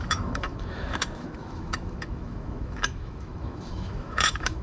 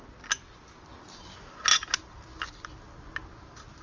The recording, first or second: second